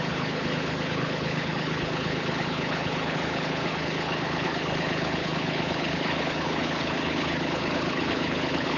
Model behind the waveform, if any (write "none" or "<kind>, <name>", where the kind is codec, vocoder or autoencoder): codec, HILCodec